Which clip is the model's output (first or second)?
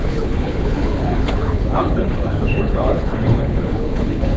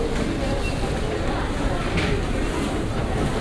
first